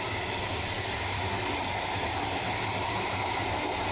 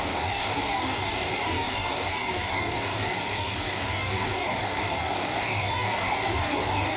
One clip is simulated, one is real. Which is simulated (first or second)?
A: second